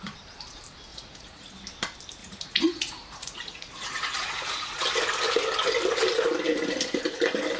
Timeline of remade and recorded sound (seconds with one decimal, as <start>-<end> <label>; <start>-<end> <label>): 0.0-0.9 recorded; 0.9-1.5 remade; 1.5-2.2 recorded; 2.2-4.8 remade; 4.8-7.6 recorded